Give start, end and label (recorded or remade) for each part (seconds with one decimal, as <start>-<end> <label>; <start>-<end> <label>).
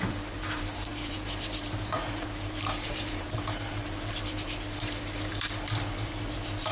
0.0-6.7 remade